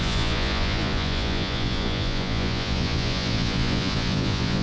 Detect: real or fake fake